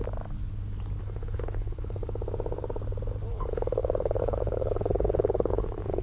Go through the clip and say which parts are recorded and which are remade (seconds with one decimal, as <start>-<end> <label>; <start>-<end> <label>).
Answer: 0.0-1.0 recorded; 1.0-2.0 remade; 2.0-3.3 recorded; 3.3-6.0 remade